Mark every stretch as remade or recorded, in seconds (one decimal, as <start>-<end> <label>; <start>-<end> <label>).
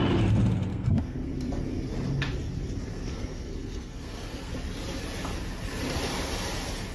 0.0-0.7 recorded; 0.7-1.3 remade; 1.3-2.9 recorded; 2.9-4.5 remade; 4.5-6.9 recorded